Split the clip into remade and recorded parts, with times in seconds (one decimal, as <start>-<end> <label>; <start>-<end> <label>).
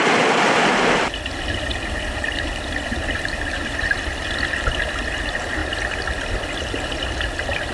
0.0-7.7 recorded